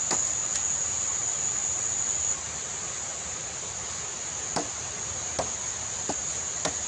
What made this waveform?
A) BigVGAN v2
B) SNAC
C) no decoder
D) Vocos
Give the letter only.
C